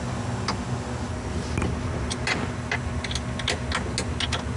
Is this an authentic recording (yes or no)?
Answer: yes